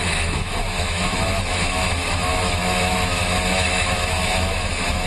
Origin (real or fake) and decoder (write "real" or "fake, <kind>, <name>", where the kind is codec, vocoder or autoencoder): fake, autoencoder, DAC-VAE